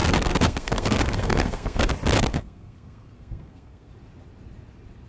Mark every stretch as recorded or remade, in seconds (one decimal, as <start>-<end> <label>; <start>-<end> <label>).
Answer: 0.0-1.9 remade; 1.9-2.3 recorded; 2.3-3.9 remade; 3.9-5.1 recorded